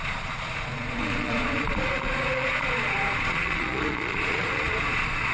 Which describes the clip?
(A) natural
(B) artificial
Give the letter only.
B